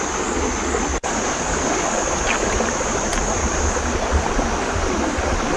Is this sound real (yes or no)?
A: yes